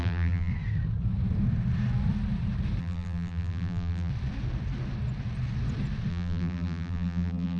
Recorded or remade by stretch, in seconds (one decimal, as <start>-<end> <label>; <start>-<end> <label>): 0.0-0.5 remade; 0.5-2.8 recorded; 2.8-4.1 remade; 4.1-6.1 recorded; 6.1-7.6 remade